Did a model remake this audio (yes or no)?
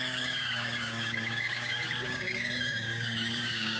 yes